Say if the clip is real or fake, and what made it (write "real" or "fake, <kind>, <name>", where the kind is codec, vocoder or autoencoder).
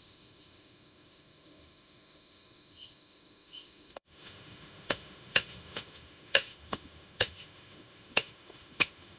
fake, autoencoder, DAC-VAE